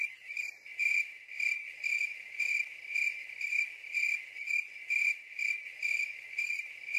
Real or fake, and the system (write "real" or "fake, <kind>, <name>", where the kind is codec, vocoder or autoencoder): real